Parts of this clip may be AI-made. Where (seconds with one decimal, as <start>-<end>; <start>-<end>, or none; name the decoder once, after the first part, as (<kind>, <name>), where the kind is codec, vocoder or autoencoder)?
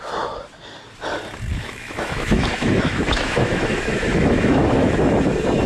1.5-4.9 (autoencoder, DAC-VAE)